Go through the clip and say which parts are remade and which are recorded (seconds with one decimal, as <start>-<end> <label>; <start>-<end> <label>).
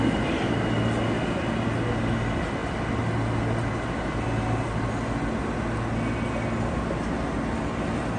0.0-8.2 recorded